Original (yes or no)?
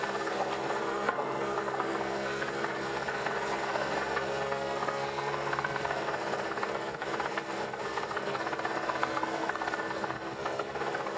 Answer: no